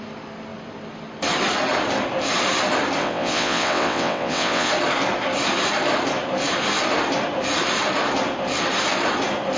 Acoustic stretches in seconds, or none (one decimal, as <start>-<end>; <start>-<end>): 0.0-3.0; 4.7-9.6